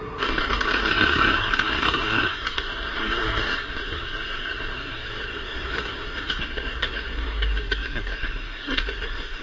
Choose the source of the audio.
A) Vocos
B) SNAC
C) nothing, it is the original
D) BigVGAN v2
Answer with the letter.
B